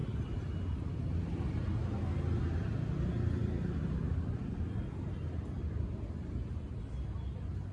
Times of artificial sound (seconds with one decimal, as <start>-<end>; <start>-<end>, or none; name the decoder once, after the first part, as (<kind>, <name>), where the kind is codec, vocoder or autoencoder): none